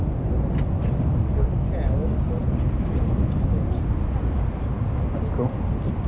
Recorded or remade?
recorded